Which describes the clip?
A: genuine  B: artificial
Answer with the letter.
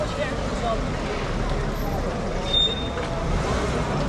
A